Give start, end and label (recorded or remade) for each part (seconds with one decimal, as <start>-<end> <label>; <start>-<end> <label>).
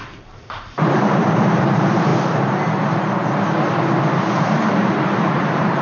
0.0-2.1 remade; 2.1-4.4 recorded; 4.4-5.8 remade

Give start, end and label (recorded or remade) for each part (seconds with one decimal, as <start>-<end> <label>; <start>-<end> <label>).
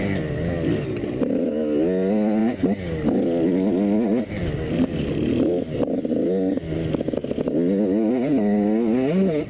0.0-9.5 recorded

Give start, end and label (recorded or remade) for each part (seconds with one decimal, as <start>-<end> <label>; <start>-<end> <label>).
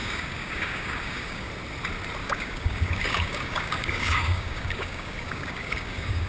0.0-1.5 remade; 1.5-2.2 recorded; 2.2-6.3 remade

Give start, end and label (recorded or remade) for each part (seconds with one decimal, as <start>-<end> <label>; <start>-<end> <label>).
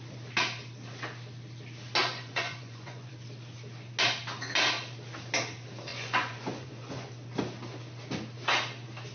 0.0-2.0 recorded; 2.0-3.1 remade; 3.1-5.9 recorded; 5.9-7.1 remade; 7.1-9.1 recorded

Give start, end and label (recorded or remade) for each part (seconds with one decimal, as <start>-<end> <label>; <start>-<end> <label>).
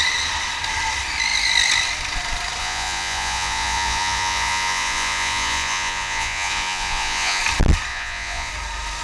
0.0-2.6 recorded; 2.6-7.4 remade; 7.4-7.9 recorded; 7.9-8.5 remade; 8.5-9.0 recorded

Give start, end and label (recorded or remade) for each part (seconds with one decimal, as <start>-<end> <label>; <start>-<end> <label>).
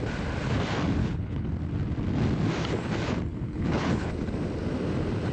0.0-1.0 recorded; 1.0-1.5 remade; 1.5-3.3 recorded; 3.3-4.1 remade; 4.1-5.3 recorded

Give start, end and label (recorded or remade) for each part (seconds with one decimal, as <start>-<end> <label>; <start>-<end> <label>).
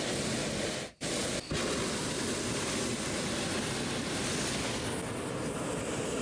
0.0-6.2 recorded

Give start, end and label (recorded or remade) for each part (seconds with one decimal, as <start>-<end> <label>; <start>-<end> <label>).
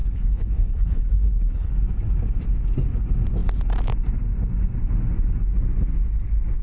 0.0-1.7 remade; 1.7-6.6 recorded